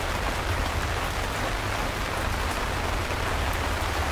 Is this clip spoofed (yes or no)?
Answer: no